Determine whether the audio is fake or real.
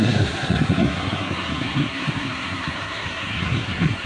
fake